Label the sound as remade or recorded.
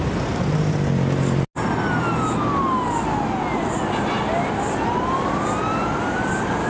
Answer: recorded